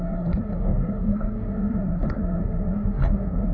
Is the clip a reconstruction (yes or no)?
yes